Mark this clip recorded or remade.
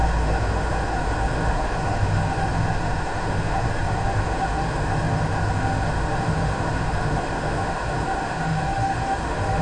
remade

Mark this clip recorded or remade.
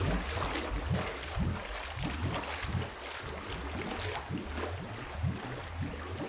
recorded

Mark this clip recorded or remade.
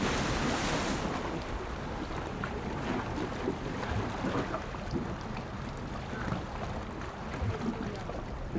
recorded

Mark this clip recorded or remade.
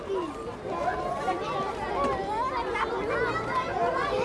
recorded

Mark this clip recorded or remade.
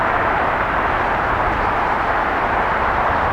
recorded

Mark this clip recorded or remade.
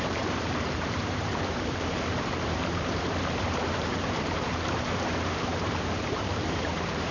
remade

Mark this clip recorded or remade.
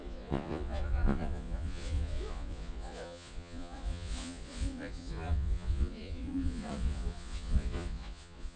remade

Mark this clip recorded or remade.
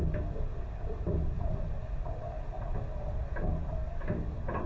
recorded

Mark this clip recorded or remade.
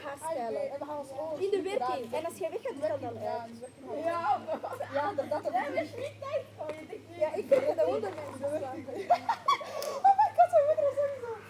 recorded